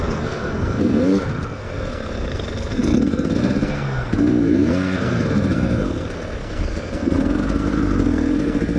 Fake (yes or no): yes